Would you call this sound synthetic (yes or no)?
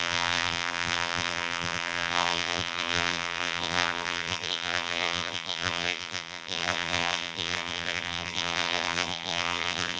yes